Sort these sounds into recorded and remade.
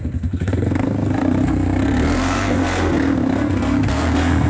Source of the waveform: remade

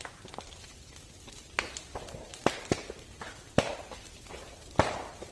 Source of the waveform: recorded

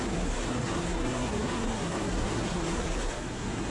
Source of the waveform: remade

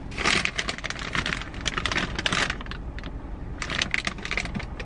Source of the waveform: recorded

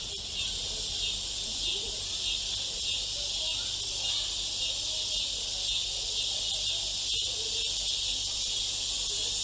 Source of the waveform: recorded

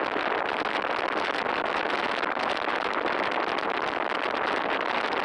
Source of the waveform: recorded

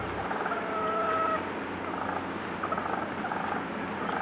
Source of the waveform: recorded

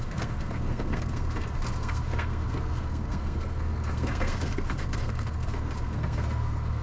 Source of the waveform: remade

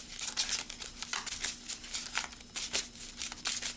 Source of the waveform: recorded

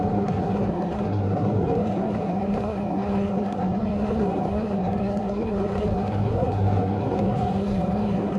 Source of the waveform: remade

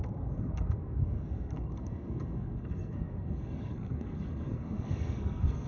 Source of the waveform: remade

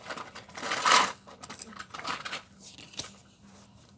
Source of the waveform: recorded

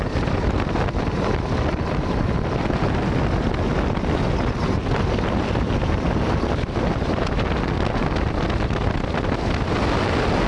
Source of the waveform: recorded